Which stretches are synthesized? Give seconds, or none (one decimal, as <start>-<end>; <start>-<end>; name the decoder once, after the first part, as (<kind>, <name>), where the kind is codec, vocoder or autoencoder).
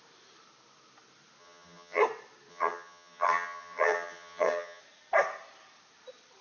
1.4-2.0 (vocoder, HiFi-GAN); 2.5-4.8